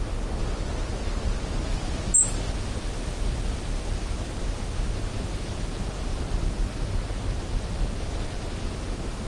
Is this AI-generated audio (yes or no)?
no